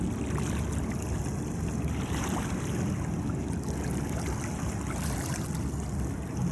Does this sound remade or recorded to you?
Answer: recorded